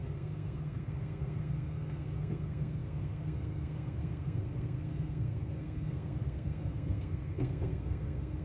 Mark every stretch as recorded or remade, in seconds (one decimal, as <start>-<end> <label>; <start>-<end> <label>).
0.0-8.4 remade